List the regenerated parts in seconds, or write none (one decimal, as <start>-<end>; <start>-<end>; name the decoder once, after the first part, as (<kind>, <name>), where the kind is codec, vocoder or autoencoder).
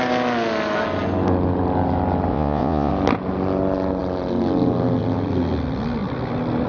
2.3-2.9 (vocoder, Vocos)